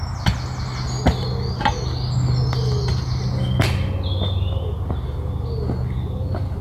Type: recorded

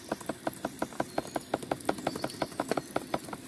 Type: recorded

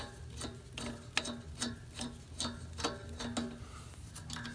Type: recorded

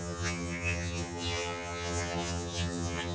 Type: remade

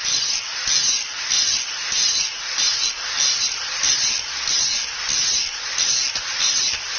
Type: recorded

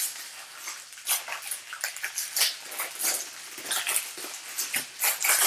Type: recorded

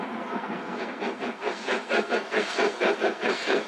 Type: remade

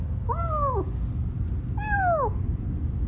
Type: recorded